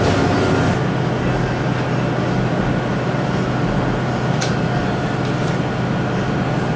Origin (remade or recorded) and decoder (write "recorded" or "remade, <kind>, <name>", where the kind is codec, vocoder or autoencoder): recorded